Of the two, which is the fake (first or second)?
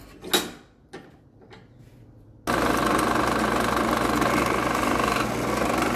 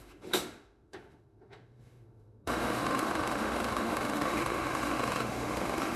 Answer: second